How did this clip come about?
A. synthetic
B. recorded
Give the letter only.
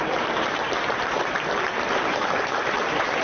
A